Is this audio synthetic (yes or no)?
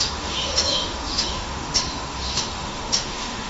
yes